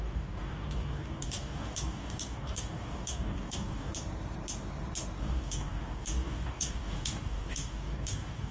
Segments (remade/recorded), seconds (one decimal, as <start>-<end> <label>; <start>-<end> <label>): 0.0-3.9 remade; 3.9-5.2 recorded; 5.2-8.5 remade

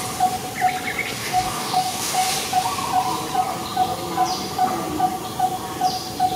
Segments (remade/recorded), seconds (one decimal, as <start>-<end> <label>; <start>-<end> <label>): 0.0-1.2 recorded; 1.2-2.3 remade; 2.3-6.4 recorded

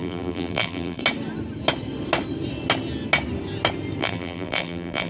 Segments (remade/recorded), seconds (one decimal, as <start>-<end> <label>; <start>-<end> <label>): 0.0-1.0 remade; 1.0-4.0 recorded; 4.0-5.1 remade

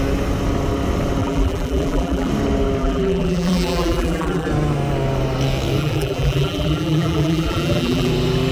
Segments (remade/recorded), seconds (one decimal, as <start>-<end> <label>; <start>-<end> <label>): 0.0-1.2 recorded; 1.2-2.3 remade; 2.3-2.8 recorded; 2.8-4.5 remade; 4.5-5.8 recorded; 5.8-8.1 remade; 8.1-8.5 recorded

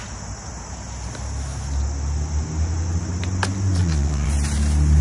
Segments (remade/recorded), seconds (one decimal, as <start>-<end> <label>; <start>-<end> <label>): 0.0-3.8 recorded; 3.8-4.3 remade; 4.3-5.0 recorded

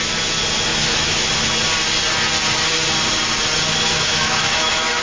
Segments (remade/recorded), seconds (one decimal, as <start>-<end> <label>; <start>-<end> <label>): 0.0-0.7 recorded; 0.7-1.3 remade; 1.3-3.7 recorded; 3.7-5.0 remade

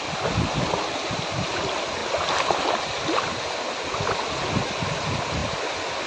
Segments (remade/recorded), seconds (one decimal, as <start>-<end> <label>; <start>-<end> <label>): 0.0-6.1 recorded